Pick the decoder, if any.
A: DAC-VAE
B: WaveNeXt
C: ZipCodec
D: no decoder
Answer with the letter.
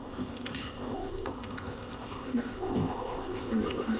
C